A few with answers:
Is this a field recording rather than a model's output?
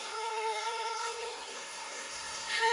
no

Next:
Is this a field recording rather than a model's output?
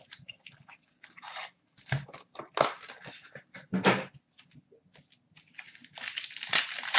yes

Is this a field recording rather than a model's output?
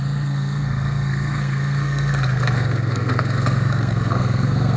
no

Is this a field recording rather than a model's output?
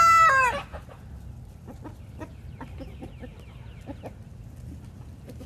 yes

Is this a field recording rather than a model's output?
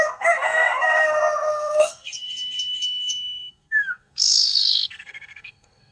no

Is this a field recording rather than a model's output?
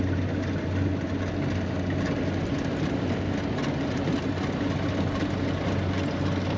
yes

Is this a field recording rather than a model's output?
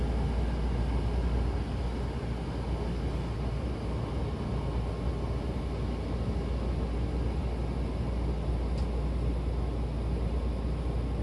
yes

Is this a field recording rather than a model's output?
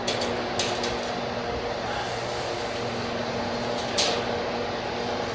yes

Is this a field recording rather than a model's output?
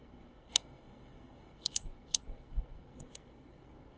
no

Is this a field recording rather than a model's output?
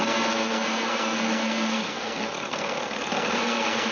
no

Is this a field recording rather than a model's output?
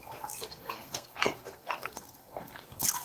no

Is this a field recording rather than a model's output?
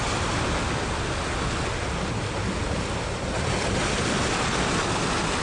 yes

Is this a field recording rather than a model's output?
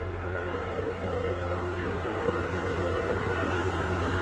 no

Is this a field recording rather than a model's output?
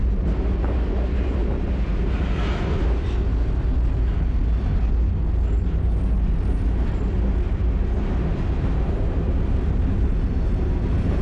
yes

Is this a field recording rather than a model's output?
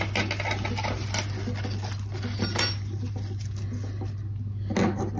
yes